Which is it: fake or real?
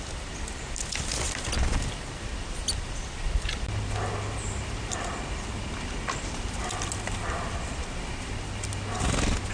real